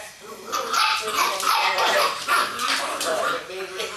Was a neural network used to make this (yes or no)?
yes